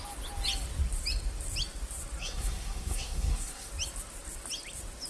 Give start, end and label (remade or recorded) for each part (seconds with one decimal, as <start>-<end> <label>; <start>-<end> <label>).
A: 0.0-2.2 recorded; 2.2-3.7 remade; 3.7-5.1 recorded